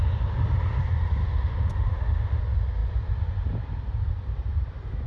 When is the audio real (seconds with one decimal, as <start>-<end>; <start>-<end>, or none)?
0.0-1.2; 2.4-5.1